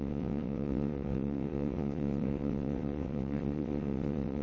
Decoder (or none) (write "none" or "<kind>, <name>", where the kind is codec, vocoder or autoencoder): vocoder, WaveNeXt